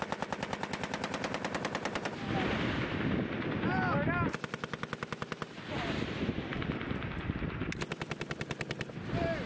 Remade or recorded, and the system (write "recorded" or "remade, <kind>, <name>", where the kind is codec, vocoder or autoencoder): recorded